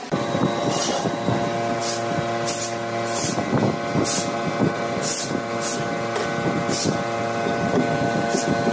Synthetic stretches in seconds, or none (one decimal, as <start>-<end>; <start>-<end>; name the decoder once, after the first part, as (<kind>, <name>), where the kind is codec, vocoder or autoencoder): none